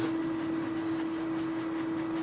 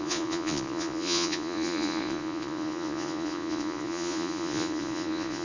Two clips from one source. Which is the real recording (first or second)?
first